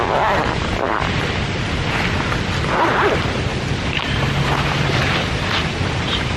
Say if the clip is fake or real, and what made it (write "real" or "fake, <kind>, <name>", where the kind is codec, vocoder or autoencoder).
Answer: real